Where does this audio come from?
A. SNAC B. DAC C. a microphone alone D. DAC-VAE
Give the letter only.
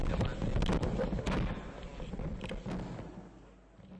C